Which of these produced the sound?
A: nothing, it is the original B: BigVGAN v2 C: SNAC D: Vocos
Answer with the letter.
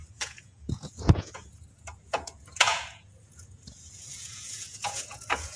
D